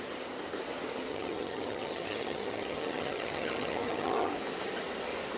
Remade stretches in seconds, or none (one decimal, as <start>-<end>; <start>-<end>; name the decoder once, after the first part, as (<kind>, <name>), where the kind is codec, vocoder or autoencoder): 1.1-4.3 (vocoder, HiFi-GAN)